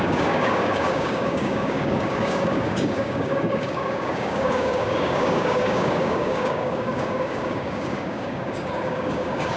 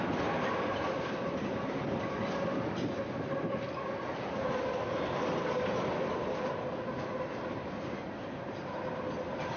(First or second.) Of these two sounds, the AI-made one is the first